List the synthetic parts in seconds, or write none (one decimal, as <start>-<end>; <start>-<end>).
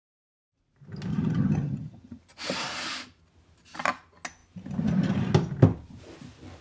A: 1.1-2.2